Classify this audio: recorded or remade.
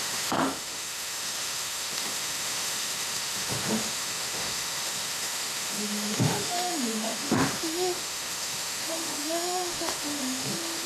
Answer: remade